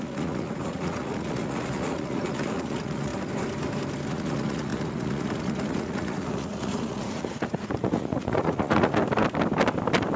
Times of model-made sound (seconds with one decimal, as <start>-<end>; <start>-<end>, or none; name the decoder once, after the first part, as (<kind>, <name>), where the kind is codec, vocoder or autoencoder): 0.0-3.1 (vocoder, Vocos); 4.1-9.0